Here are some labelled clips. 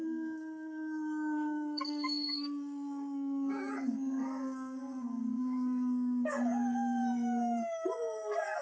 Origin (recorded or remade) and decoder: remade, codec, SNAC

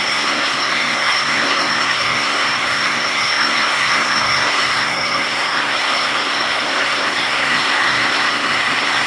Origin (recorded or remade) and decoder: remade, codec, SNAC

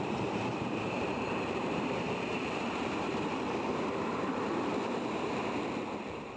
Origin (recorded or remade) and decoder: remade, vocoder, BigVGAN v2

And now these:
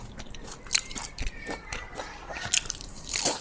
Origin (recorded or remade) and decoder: remade, vocoder, BigVGAN v2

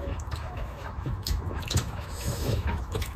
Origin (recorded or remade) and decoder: remade, autoencoder, DAC-VAE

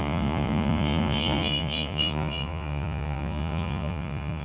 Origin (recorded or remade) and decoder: remade, vocoder, Vocos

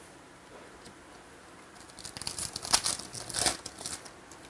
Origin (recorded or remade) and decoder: recorded